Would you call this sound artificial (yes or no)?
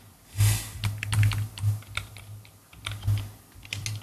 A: no